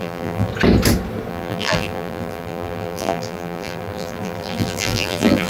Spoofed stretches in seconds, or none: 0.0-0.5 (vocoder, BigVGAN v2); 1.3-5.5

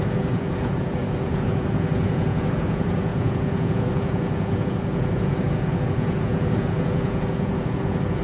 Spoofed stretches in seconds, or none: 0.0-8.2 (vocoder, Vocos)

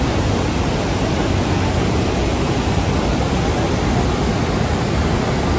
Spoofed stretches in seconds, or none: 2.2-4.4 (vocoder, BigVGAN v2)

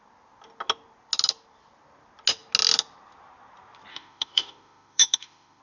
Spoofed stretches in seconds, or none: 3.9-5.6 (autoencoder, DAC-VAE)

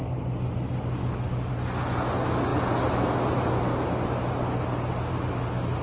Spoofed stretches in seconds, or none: none

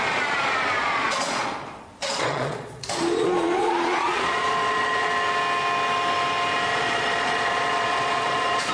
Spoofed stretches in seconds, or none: 0.8-5.1 (vocoder, Vocos); 6.7-8.7

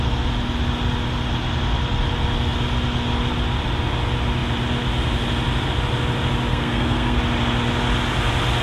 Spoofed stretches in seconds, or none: 6.5-7.2 (codec, SNAC)